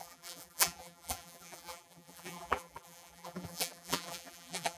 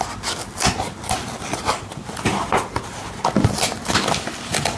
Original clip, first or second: second